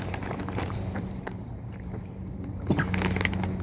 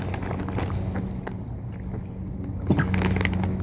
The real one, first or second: second